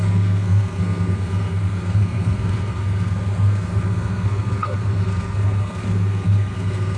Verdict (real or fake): fake